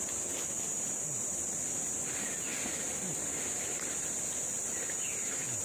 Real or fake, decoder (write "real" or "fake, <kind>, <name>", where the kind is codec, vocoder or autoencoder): real